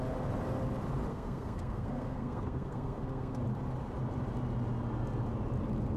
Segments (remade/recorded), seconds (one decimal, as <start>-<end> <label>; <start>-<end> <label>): 0.0-1.1 recorded; 1.1-3.4 remade; 3.4-6.0 recorded